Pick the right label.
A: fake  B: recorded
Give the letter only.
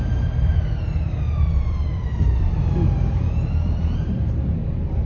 B